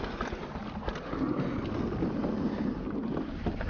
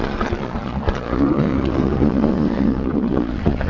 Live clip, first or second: first